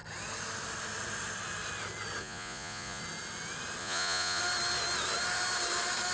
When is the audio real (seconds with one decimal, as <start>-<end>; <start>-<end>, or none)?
0.0-2.2; 3.0-3.8; 4.4-6.1